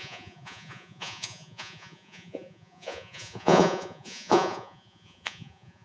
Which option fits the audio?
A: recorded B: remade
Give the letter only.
B